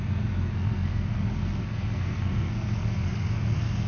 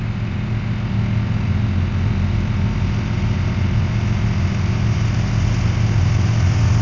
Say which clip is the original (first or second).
second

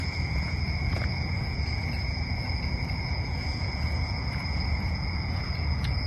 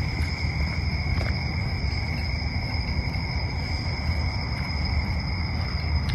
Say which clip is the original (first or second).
second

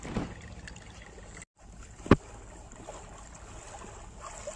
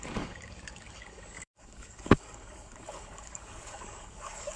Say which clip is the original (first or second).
first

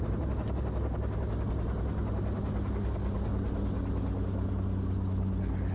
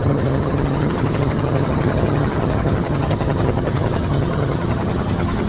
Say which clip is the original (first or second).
first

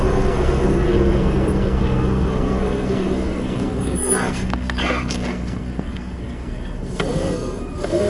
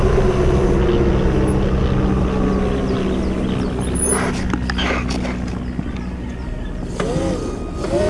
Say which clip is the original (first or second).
second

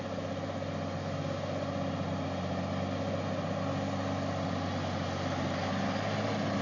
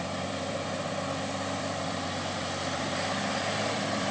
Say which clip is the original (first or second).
first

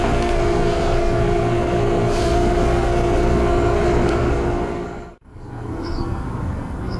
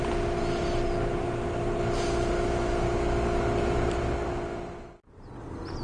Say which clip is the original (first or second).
second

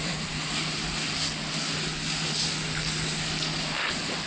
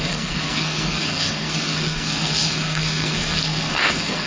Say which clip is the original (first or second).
first